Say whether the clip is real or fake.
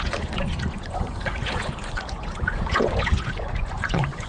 fake